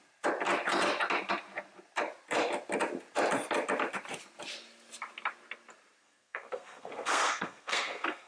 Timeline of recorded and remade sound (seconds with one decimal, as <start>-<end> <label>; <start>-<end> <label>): 0.0-6.0 recorded; 6.0-8.3 remade